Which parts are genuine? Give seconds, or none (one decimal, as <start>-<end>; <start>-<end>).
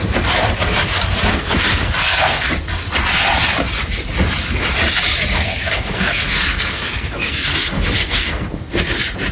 0.0-1.3; 2.5-5.3; 8.8-9.3